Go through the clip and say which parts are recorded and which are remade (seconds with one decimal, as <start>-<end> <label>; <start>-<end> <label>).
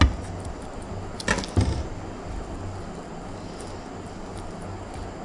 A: 0.0-5.2 recorded